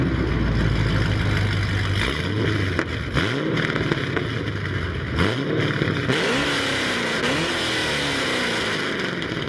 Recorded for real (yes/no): yes